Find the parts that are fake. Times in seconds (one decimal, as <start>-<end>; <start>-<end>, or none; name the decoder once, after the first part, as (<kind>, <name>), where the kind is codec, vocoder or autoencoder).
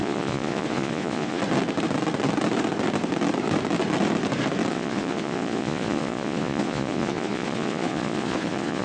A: 0.0-1.4 (vocoder, Vocos); 4.7-8.8